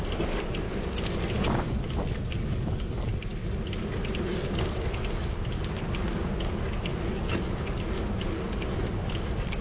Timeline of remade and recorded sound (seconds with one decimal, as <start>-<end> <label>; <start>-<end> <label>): 0.0-9.6 recorded

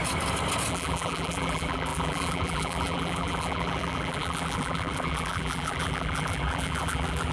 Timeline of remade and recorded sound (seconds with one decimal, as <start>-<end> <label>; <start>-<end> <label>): 0.0-0.7 recorded; 0.7-7.3 remade

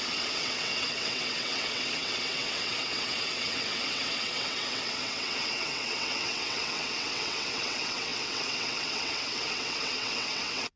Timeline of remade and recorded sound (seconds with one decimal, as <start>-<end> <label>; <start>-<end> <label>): 0.0-10.8 remade

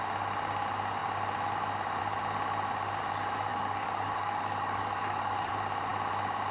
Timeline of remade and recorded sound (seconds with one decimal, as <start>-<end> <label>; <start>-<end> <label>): 0.0-3.5 recorded; 3.5-5.5 remade; 5.5-6.5 recorded

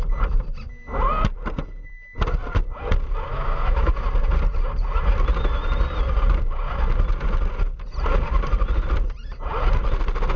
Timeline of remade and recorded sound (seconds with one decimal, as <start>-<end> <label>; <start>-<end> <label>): 0.0-3.3 recorded; 3.3-3.9 remade; 3.9-10.4 recorded

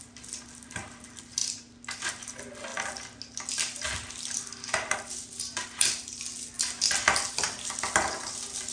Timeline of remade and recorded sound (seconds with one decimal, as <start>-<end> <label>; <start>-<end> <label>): 0.0-8.7 recorded